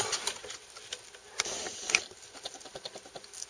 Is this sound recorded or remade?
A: recorded